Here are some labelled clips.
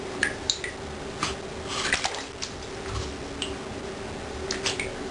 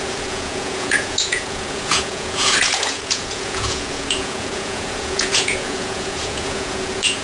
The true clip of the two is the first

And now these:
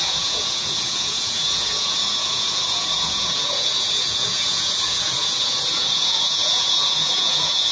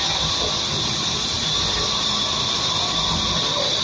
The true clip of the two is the second